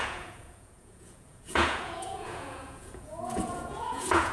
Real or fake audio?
fake